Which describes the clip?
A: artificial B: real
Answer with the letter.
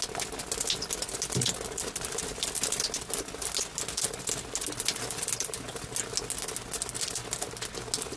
B